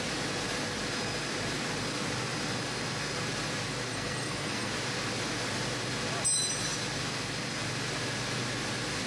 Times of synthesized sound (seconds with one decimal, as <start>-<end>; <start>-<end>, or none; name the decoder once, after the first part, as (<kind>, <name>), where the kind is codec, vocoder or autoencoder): 3.9-4.7 (codec, SNAC)